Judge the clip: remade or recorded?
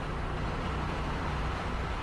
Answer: recorded